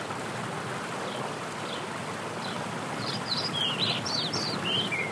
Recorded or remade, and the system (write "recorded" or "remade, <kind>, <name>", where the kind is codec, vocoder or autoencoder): remade, vocoder, BigVGAN v2